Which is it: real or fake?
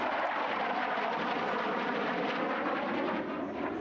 real